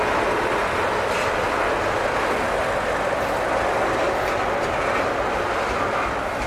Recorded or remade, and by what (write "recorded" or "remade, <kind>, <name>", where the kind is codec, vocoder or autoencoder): recorded